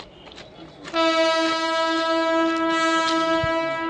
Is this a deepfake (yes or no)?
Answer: no